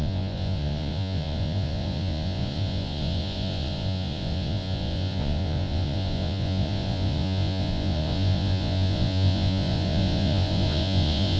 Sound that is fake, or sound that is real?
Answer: fake